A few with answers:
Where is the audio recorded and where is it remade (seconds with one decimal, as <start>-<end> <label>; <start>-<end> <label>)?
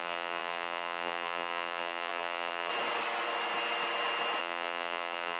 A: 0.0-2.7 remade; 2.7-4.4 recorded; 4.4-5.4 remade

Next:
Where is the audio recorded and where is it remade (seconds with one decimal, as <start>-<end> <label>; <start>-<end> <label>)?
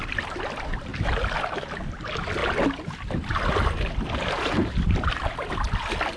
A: 0.0-0.9 recorded; 0.9-1.5 remade; 1.5-6.2 recorded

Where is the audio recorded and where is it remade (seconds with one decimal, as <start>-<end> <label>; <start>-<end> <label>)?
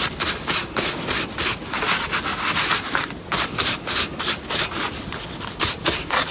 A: 0.0-2.3 recorded; 2.3-5.6 remade; 5.6-6.3 recorded